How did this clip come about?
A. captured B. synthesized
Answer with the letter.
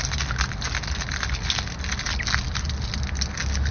A